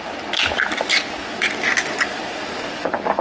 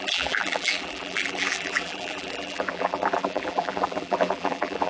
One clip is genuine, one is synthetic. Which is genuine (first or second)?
first